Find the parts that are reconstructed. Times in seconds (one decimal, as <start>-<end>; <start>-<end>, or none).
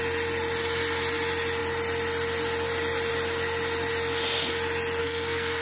5.0-5.6